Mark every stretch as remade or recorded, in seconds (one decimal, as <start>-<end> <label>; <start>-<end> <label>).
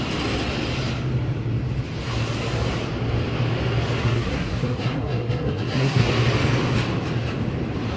0.0-4.0 recorded; 4.0-6.1 remade; 6.1-8.0 recorded